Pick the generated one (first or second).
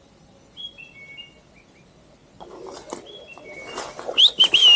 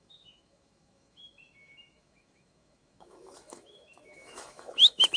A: second